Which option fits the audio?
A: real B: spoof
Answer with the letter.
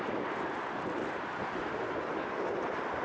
A